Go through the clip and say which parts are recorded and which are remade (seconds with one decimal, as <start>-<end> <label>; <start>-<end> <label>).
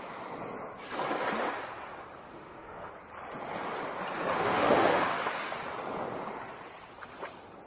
0.0-2.3 recorded; 2.3-2.9 remade; 2.9-4.3 recorded; 4.3-5.5 remade; 5.5-7.7 recorded